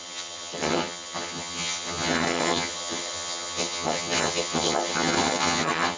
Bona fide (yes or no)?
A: no